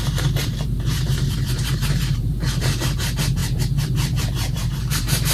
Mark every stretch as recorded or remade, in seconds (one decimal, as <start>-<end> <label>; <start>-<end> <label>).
0.0-5.3 remade